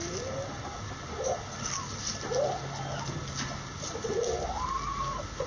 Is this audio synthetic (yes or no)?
no